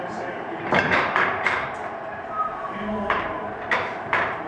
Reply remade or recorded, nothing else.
remade